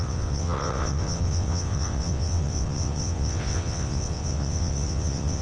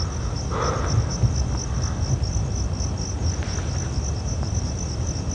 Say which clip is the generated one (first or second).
first